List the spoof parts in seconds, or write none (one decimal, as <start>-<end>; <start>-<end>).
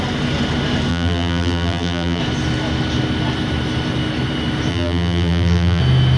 0.9-2.2; 4.7-5.8